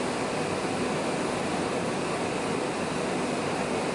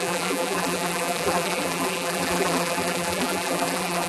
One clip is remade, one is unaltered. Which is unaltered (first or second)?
first